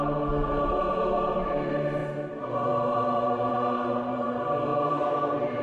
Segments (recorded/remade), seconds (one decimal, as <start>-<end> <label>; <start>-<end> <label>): 0.0-5.6 remade